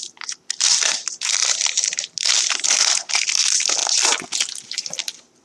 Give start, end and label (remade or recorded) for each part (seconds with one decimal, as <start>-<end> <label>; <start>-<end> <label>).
0.0-5.4 recorded